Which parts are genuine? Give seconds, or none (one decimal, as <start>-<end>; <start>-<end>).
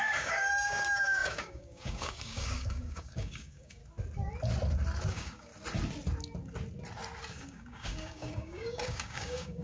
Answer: 3.8-5.1; 5.5-7.3